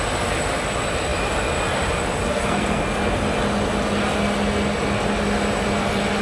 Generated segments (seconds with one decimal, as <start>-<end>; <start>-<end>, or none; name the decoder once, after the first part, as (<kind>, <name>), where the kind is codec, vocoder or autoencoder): 2.3-2.8 (codec, SNAC)